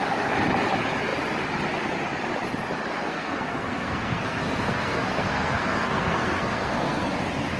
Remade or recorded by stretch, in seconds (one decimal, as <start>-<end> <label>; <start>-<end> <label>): 0.0-3.0 recorded; 3.0-7.1 remade; 7.1-7.6 recorded